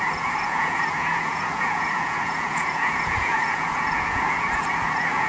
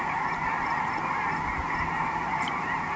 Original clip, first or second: second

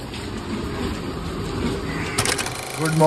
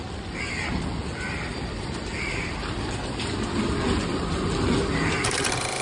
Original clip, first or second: first